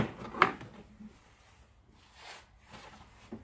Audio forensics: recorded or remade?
recorded